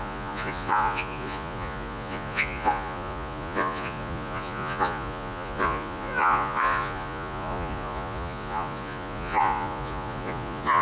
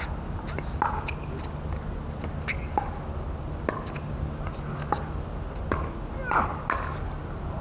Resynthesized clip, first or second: first